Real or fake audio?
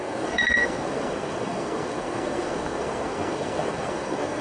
fake